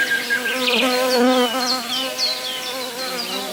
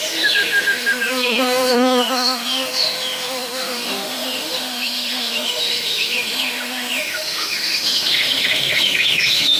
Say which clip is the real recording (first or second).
first